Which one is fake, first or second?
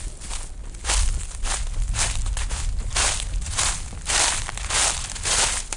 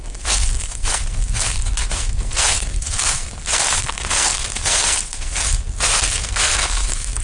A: second